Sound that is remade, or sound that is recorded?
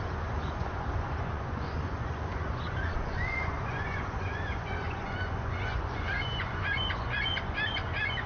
remade